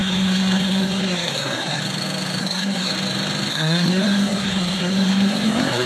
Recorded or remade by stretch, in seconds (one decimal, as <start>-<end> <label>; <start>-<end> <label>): 0.0-1.8 remade; 1.8-2.4 recorded; 2.4-2.9 remade; 2.9-3.5 recorded; 3.5-5.9 remade

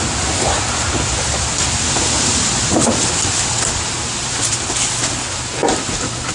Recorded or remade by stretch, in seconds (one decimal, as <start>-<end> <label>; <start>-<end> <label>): 0.0-6.3 recorded

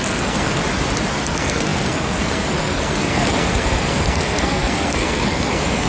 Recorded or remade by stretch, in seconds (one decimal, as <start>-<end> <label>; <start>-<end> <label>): 0.0-0.6 remade; 0.6-1.1 recorded; 1.1-5.9 remade

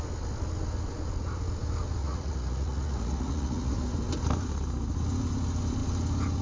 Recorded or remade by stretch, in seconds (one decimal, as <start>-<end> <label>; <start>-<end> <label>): 0.0-2.0 recorded; 2.0-3.7 remade; 3.7-6.4 recorded

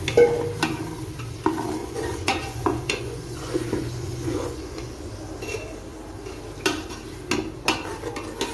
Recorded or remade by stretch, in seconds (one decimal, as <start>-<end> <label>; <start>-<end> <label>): 0.0-1.8 recorded; 1.8-5.1 remade; 5.1-8.5 recorded

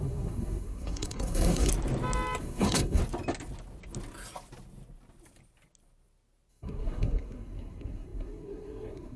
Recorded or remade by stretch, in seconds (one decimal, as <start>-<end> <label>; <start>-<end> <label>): 0.0-1.7 remade; 1.7-2.4 recorded; 2.4-3.0 remade; 3.0-6.5 recorded; 6.5-9.2 remade

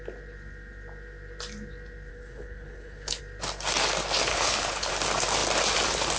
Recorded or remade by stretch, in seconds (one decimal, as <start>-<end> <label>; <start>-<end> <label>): 0.0-2.1 recorded; 2.1-3.2 remade; 3.2-4.3 recorded; 4.3-4.9 remade; 4.9-6.2 recorded